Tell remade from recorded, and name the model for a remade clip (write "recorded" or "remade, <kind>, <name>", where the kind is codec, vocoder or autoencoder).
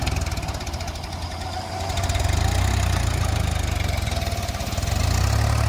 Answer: recorded